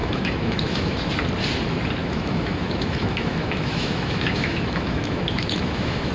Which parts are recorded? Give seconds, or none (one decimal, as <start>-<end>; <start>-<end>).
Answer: 1.1-2.0